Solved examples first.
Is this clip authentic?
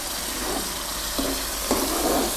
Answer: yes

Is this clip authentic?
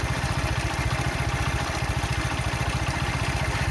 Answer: yes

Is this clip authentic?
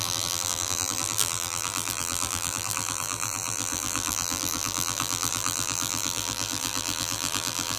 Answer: no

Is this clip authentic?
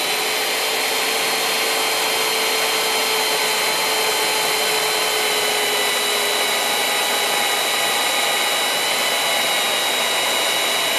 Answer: yes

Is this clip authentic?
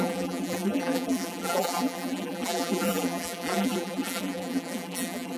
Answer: no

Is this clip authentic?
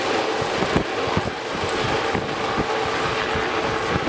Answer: yes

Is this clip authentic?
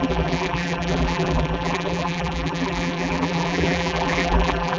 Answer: no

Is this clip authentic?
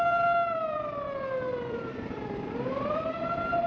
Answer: no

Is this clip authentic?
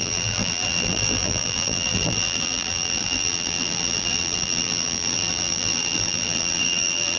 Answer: no